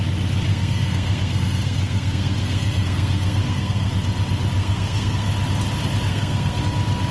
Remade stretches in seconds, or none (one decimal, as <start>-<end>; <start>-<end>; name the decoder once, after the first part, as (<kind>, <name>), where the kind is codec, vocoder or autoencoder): 0.5-3.9 (codec, SNAC); 4.6-5.3; 6.1-6.6